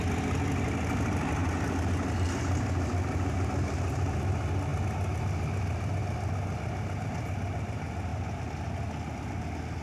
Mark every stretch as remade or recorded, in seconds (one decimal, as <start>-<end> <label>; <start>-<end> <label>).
0.0-9.8 recorded